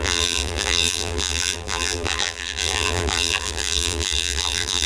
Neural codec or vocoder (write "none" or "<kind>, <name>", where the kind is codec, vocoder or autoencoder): vocoder, BigVGAN v2